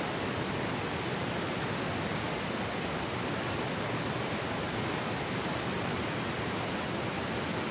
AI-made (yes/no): no